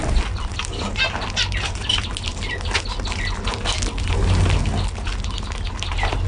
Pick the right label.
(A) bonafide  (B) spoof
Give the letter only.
A